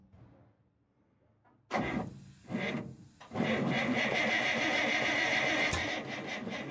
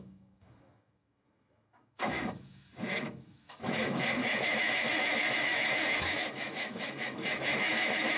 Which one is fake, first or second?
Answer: second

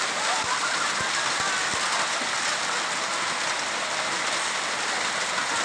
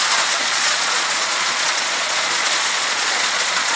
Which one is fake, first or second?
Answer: second